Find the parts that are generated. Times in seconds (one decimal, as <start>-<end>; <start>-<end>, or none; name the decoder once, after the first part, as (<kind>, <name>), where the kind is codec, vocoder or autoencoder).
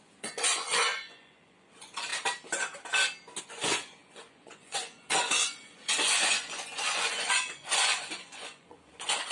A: 0.0-2.1 (vocoder, Vocos); 3.4-9.3